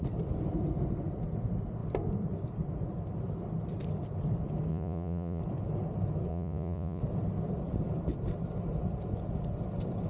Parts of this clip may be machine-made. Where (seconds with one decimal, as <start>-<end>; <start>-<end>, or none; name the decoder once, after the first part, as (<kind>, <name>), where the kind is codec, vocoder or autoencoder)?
4.7-5.4 (vocoder, Vocos); 6.3-7.0